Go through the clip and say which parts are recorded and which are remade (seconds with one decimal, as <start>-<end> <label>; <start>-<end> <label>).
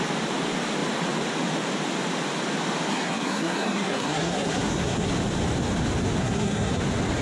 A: 0.0-2.9 recorded; 2.9-5.1 remade; 5.1-6.2 recorded; 6.2-6.8 remade; 6.8-7.2 recorded